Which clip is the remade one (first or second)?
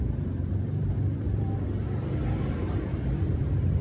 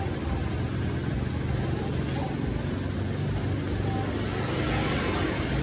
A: first